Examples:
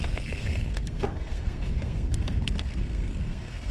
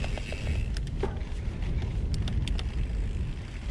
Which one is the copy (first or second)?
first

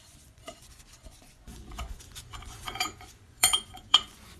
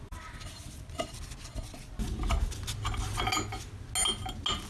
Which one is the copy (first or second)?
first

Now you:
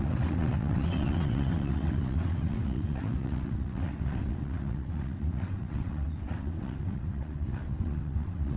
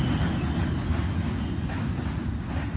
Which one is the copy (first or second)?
first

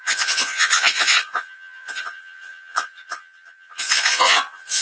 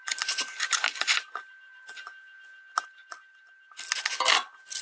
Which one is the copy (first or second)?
first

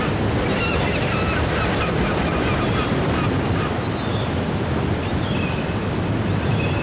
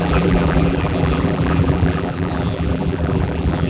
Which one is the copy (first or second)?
second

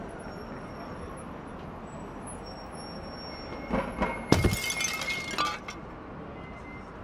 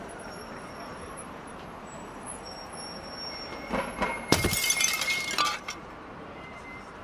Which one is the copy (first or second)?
second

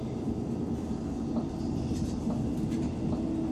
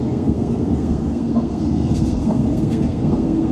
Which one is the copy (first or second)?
second